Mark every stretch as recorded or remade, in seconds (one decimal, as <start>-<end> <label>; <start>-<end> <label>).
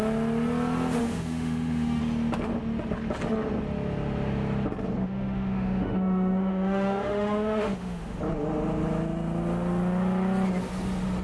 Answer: 0.0-1.0 recorded; 1.0-2.0 remade; 2.0-5.0 recorded; 5.0-8.2 remade; 8.2-11.2 recorded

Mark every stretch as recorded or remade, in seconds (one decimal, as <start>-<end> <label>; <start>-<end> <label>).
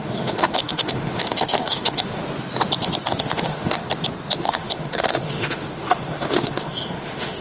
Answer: 0.0-2.2 remade; 2.2-3.2 recorded; 3.2-3.8 remade; 3.8-4.4 recorded; 4.4-7.4 remade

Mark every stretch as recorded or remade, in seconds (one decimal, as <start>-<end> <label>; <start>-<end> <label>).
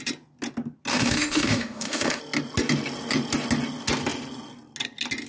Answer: 0.0-0.9 recorded; 0.9-2.2 remade; 2.2-5.3 recorded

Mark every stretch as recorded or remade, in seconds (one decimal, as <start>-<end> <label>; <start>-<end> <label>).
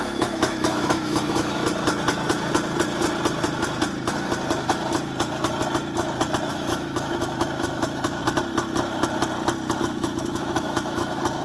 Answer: 0.0-1.6 remade; 1.6-6.5 recorded; 6.5-8.2 remade; 8.2-9.8 recorded; 9.8-11.4 remade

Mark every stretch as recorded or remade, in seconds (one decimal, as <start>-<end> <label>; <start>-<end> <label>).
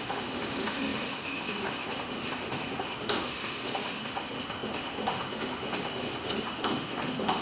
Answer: 0.0-7.4 remade